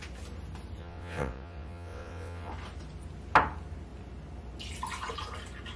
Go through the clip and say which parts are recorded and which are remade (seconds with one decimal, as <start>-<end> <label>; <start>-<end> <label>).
0.0-0.8 recorded; 0.8-2.5 remade; 2.5-5.8 recorded